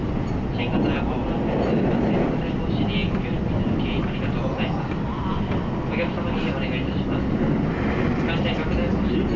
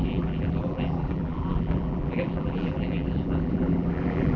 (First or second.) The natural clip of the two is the first